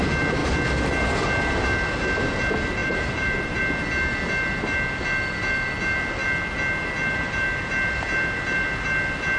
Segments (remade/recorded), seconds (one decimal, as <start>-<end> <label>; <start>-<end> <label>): 0.0-2.8 recorded; 2.8-3.6 remade; 3.6-9.4 recorded